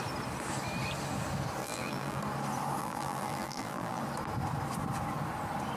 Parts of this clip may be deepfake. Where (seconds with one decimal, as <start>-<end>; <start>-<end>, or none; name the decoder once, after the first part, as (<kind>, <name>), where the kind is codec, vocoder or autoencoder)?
1.6-2.2 (vocoder, BigVGAN v2); 2.8-4.0